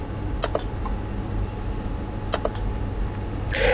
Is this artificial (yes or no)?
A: no